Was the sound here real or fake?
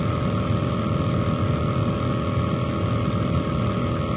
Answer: real